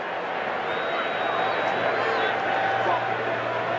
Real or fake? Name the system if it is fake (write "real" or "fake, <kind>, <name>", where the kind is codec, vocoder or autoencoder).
real